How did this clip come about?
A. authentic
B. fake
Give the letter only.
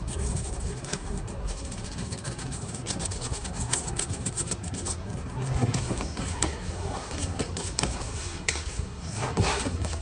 B